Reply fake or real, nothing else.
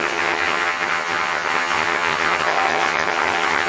fake